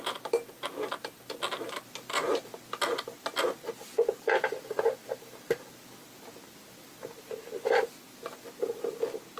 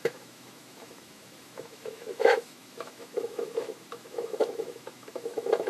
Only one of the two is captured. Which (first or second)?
first